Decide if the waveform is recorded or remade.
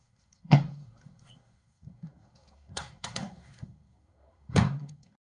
remade